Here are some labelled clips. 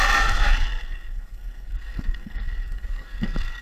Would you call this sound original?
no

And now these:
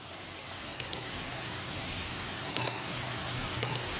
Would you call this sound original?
no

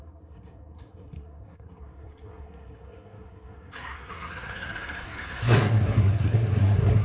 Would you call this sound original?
no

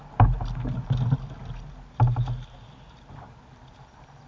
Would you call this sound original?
yes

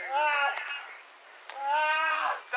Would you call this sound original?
yes